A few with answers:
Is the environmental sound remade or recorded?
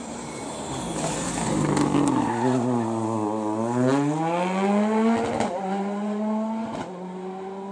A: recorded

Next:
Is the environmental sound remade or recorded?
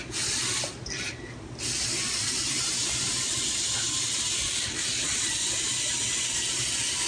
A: recorded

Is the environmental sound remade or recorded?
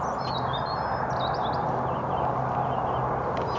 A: recorded